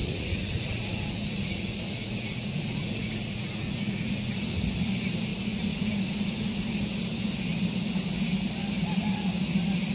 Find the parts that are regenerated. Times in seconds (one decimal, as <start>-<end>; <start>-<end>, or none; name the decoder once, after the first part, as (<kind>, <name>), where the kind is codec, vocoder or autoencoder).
0.0-4.3 (vocoder, Vocos); 5.3-6.7